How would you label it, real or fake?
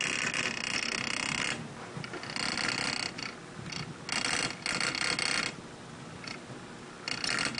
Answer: real